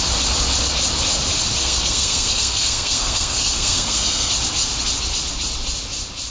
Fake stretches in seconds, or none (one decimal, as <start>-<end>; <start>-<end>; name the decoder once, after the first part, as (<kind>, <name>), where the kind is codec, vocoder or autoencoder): 1.6-4.3 (codec, SNAC)